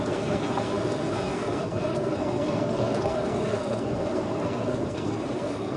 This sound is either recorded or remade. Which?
remade